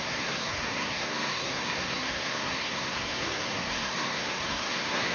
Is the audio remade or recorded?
remade